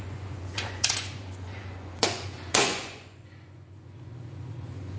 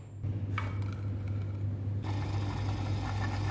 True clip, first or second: second